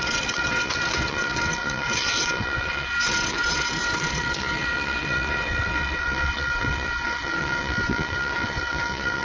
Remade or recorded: remade